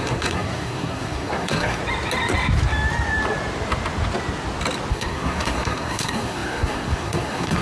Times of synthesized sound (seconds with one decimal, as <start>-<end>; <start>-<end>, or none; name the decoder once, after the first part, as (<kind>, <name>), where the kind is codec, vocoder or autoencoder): 0.0-1.8 (codec, SNAC); 4.9-7.6